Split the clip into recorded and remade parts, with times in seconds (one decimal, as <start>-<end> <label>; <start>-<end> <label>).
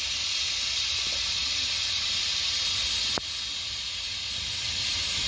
0.0-5.3 recorded